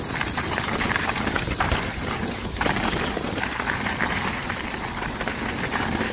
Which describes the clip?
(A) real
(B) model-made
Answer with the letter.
A